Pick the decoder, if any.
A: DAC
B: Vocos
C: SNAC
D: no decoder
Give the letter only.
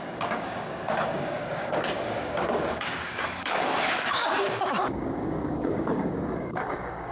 A